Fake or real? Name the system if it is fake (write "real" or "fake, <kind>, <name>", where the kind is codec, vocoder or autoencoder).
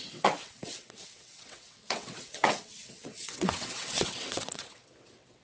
fake, vocoder, WaveNeXt